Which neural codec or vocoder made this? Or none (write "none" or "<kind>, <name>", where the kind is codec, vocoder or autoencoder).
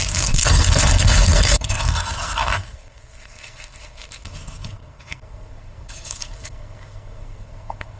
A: codec, SNAC